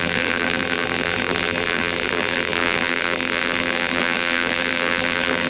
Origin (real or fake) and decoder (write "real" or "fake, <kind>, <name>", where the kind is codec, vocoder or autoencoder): fake, vocoder, BigVGAN v2